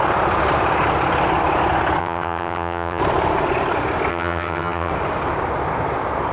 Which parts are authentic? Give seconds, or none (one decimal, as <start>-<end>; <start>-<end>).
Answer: 0.0-2.0; 3.0-4.1; 4.9-6.3